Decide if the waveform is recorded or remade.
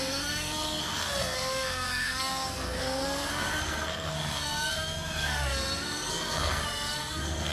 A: remade